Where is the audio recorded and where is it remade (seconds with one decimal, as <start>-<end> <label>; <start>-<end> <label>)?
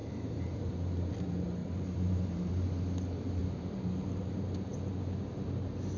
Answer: 0.0-1.1 remade; 1.1-1.6 recorded; 1.6-2.5 remade; 2.5-3.4 recorded; 3.4-4.2 remade; 4.2-6.0 recorded